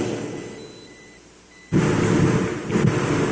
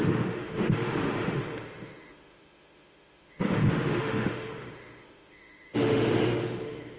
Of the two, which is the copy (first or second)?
second